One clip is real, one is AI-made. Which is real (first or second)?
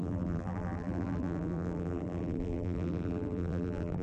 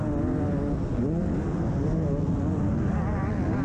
second